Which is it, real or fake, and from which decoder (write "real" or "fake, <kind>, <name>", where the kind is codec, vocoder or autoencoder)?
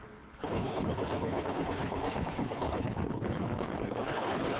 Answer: fake, codec, HILCodec